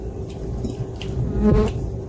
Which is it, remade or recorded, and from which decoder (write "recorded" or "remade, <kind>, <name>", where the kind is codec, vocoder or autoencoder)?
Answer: recorded